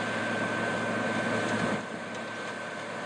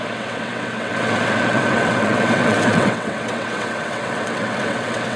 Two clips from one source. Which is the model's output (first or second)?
second